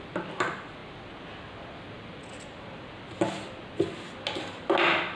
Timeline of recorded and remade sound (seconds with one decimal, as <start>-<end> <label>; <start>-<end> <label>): 0.0-5.2 recorded